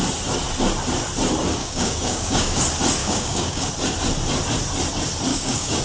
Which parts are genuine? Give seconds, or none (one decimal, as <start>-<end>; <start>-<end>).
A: 0.0-1.6; 2.6-3.0; 3.7-5.3